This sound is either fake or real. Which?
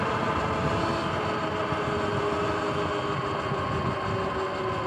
real